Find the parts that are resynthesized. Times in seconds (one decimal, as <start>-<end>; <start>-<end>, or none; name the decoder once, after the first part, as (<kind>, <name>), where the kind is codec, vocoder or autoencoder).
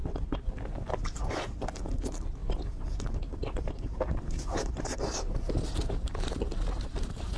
none